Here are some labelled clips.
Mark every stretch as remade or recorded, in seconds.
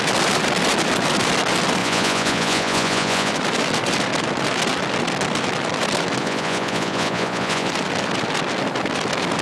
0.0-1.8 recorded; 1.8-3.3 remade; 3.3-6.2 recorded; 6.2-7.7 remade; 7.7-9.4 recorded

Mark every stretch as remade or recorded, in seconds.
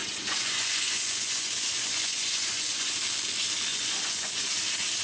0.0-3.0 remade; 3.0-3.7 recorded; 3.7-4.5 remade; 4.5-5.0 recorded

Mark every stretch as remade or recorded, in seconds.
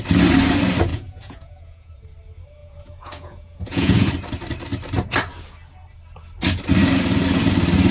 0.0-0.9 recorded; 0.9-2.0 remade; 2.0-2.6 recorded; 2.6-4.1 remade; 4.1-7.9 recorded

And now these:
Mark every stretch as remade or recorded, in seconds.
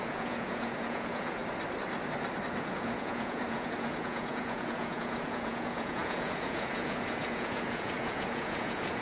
0.0-1.4 remade; 1.4-2.6 recorded; 2.6-9.0 remade